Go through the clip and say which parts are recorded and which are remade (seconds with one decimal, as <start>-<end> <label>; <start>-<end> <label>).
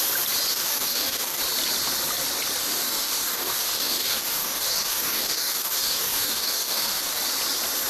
0.0-0.5 recorded; 0.5-1.4 remade; 1.4-2.6 recorded; 2.6-7.2 remade; 7.2-7.9 recorded